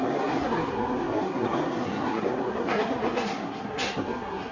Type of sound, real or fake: fake